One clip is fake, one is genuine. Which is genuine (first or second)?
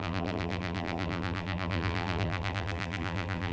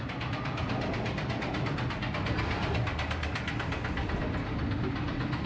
second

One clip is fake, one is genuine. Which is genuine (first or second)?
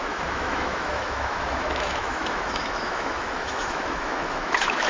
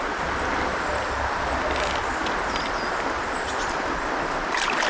second